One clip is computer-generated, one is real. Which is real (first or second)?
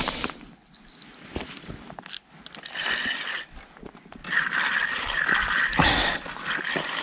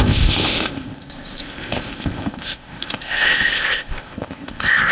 first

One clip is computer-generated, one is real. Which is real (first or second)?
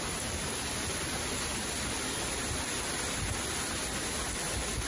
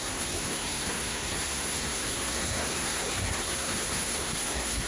first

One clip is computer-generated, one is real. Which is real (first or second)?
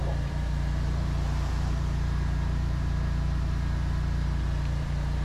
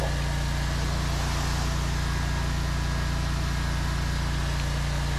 second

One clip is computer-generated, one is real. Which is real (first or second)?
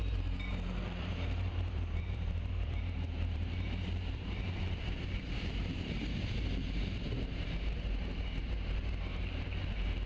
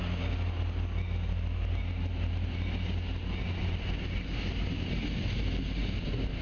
second